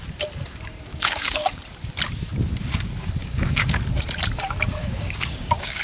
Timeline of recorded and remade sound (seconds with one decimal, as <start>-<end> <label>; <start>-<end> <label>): 0.0-0.9 recorded; 0.9-1.6 remade; 1.6-3.2 recorded; 3.2-3.8 remade; 3.8-4.8 recorded; 4.8-5.8 remade